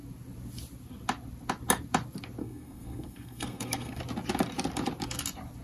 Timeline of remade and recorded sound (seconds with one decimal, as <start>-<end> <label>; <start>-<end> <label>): 0.0-2.4 recorded; 2.4-4.0 remade; 4.0-5.6 recorded